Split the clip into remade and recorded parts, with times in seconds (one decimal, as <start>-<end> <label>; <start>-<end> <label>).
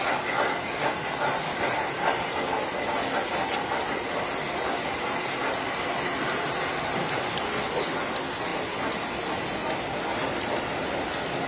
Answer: 0.0-11.5 recorded